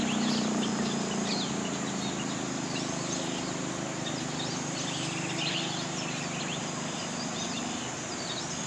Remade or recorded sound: recorded